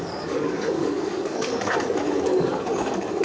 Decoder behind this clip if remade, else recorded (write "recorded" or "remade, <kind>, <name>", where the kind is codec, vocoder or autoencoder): remade, codec, DAC